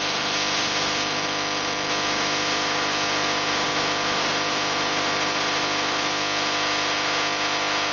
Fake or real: real